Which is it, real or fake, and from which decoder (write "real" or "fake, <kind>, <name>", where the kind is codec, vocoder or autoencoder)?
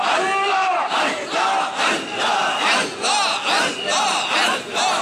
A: real